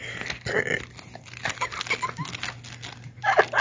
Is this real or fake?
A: real